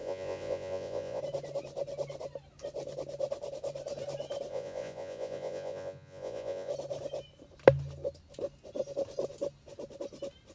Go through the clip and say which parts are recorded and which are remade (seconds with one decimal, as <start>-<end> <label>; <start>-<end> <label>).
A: 0.0-1.2 remade; 1.2-4.5 recorded; 4.5-6.7 remade; 6.7-10.5 recorded